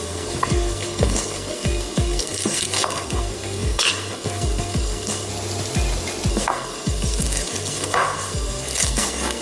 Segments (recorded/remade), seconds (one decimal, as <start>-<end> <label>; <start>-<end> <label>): 0.0-5.3 remade; 5.3-6.3 recorded; 6.3-9.4 remade